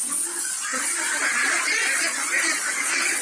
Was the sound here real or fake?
fake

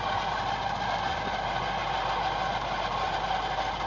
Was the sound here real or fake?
real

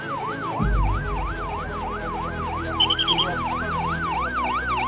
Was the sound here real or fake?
real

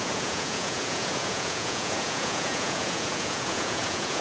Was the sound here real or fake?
fake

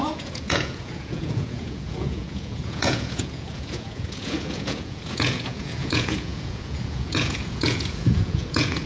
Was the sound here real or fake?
fake